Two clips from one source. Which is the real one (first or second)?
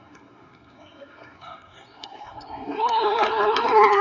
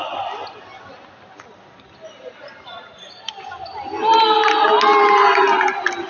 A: second